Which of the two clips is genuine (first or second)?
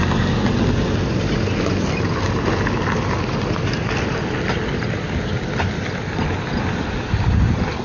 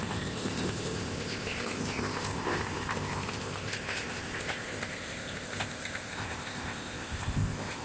first